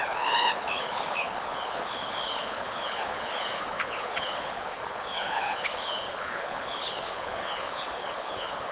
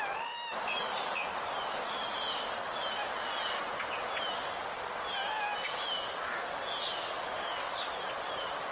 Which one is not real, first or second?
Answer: first